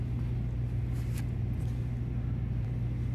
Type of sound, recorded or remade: recorded